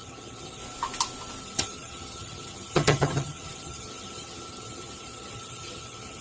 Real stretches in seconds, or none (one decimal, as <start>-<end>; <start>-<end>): 0.6-1.4